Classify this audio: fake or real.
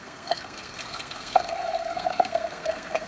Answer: fake